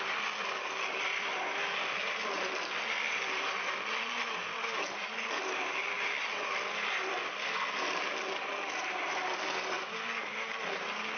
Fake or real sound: fake